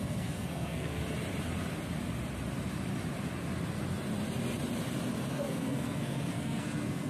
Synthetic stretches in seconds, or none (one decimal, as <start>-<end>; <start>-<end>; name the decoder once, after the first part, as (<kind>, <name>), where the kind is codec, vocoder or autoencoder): 0.0-1.0 (codec, SNAC); 5.3-7.1